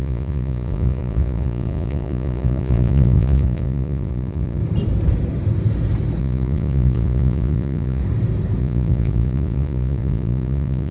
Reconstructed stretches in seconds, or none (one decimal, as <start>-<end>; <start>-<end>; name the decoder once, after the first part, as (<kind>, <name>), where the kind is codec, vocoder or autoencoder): 0.0-4.6 (vocoder, Vocos); 6.2-8.0; 8.6-10.9